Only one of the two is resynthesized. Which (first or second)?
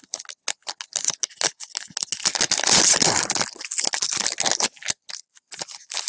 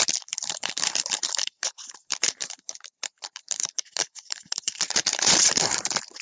second